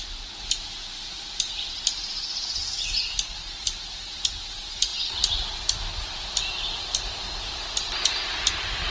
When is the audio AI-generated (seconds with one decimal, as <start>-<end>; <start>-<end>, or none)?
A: 0.9-1.7